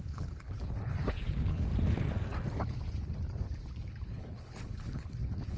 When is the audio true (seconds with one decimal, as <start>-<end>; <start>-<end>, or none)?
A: 1.7-3.8